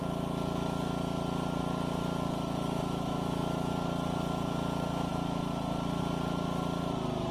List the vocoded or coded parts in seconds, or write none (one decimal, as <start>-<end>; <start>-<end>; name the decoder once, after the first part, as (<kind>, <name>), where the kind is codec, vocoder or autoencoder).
2.8-3.7 (autoencoder, DAC-VAE)